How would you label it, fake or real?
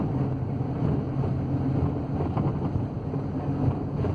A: real